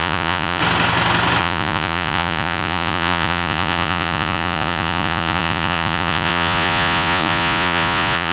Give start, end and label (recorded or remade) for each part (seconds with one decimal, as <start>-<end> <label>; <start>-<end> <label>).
0.0-0.6 remade; 0.6-1.4 recorded; 1.4-8.3 remade